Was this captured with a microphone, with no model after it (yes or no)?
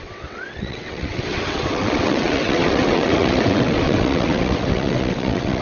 no